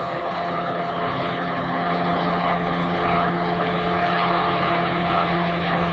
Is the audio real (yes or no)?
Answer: no